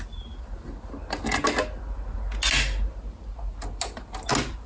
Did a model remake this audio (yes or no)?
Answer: no